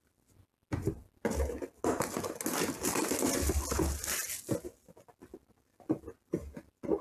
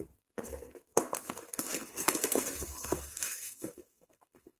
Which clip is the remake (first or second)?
second